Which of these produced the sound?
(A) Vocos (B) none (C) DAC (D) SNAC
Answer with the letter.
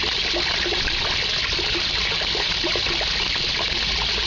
B